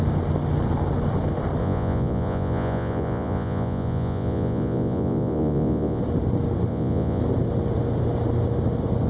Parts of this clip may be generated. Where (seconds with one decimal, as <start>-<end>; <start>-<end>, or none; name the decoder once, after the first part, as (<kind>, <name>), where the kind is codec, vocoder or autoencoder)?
1.6-6.0 (vocoder, Vocos); 6.7-7.2